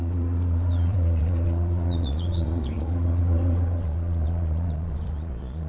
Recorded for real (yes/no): no